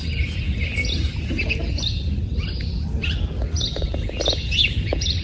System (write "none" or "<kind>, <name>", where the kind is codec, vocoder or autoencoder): none